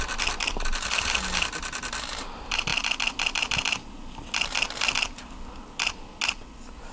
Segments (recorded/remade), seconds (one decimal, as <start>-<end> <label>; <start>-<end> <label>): 0.0-6.9 recorded